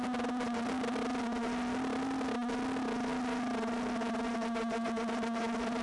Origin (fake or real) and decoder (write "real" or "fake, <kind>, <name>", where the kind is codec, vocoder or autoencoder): real